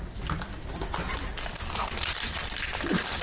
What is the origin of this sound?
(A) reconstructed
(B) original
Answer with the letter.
B